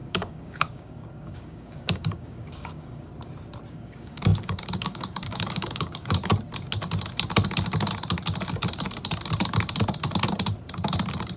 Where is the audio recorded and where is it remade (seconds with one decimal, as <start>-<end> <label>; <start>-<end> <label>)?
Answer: 0.0-3.1 remade; 3.1-3.7 recorded; 3.7-6.3 remade; 6.3-11.4 recorded